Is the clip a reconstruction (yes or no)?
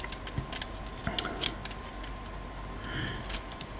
no